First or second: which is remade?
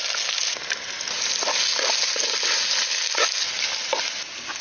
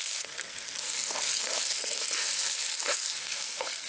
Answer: second